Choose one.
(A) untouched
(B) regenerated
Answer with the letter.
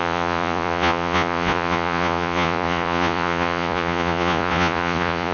B